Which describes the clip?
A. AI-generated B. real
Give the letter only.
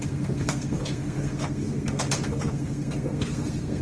A